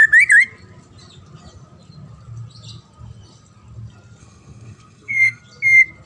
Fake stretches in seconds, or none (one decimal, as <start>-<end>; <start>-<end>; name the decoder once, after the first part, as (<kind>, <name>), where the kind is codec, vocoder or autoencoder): 4.2-5.4 (codec, SNAC)